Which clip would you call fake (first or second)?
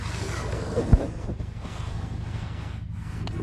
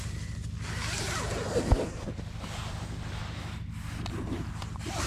first